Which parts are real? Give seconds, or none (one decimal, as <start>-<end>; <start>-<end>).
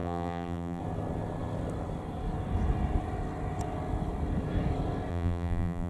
0.8-5.1